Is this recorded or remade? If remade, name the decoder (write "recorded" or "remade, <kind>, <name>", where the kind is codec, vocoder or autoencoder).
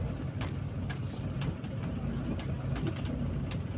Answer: recorded